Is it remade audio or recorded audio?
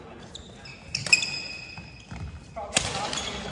recorded